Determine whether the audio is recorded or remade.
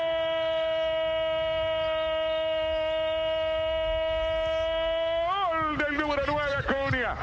recorded